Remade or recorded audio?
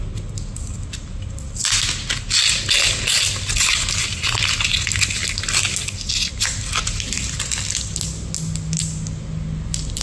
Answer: recorded